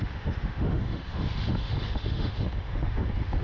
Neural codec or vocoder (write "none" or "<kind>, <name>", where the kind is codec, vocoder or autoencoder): autoencoder, DAC-VAE